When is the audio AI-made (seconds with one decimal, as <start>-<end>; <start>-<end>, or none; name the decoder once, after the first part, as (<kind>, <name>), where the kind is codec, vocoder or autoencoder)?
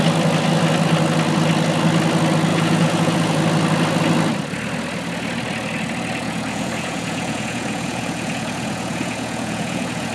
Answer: 2.5-3.4 (vocoder, Vocos); 6.2-10.1